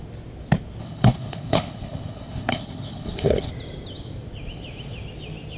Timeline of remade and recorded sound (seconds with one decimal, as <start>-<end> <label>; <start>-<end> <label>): 0.0-0.8 recorded; 0.8-3.5 remade; 3.5-5.6 recorded